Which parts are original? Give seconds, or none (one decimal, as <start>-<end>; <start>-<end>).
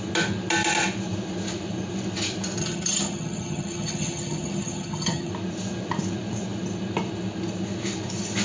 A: 0.0-2.6; 5.3-8.4